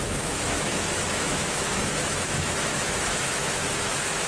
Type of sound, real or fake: fake